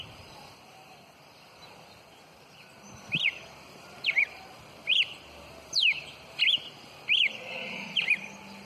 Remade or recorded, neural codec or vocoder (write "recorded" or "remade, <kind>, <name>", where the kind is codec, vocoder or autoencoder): remade, vocoder, BigVGAN v2